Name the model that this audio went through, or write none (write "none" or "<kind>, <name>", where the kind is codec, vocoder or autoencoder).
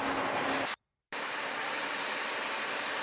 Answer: none